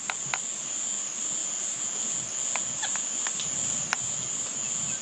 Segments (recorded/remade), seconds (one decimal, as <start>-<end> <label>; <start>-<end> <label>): 0.0-5.0 recorded